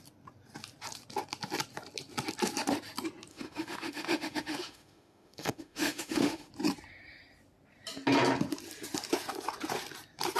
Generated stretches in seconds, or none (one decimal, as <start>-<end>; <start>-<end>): 3.3-6.5

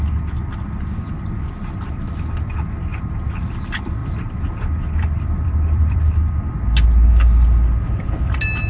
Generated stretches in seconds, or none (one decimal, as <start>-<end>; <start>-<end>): 2.9-3.6; 4.0-6.0

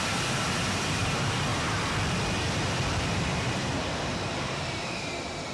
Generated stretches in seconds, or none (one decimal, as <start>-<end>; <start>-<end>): 0.0-1.5; 3.0-5.5